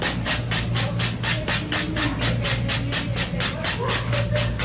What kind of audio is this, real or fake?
real